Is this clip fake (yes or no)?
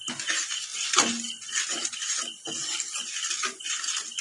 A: no